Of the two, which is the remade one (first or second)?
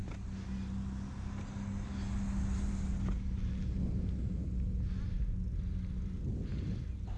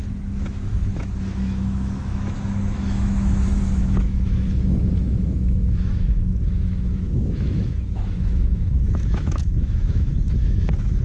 second